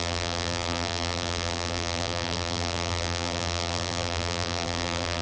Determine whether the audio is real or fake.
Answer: fake